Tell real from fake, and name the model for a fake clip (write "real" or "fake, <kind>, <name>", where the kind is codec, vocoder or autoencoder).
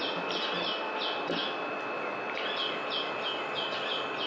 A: real